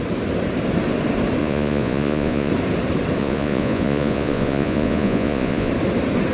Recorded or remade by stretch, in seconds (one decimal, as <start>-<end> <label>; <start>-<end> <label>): 0.0-1.4 recorded; 1.4-2.5 remade; 2.5-3.2 recorded; 3.2-5.7 remade; 5.7-6.3 recorded